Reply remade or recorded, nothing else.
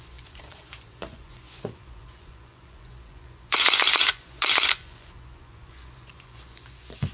remade